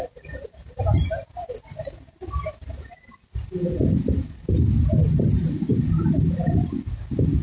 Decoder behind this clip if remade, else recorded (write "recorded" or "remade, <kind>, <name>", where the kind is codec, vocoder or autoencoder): recorded